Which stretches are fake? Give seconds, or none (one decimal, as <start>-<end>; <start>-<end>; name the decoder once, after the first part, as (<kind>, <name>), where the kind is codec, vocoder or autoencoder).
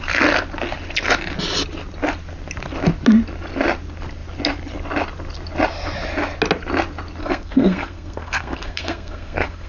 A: 7.2-9.7 (codec, SNAC)